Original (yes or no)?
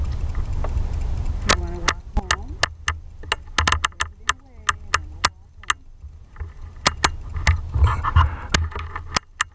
yes